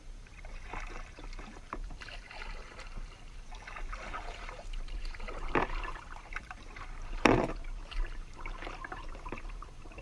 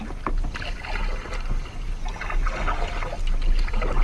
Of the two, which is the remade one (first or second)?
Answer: first